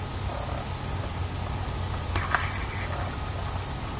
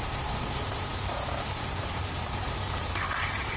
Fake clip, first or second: second